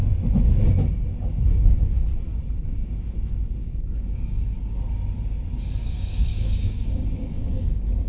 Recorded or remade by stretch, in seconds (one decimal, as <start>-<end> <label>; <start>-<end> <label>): 0.0-3.6 recorded; 3.6-4.8 remade; 4.8-5.8 recorded; 5.8-8.1 remade